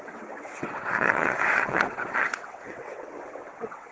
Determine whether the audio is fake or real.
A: fake